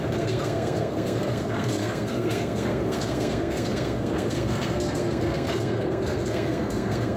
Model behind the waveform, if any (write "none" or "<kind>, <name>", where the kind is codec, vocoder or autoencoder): codec, SNAC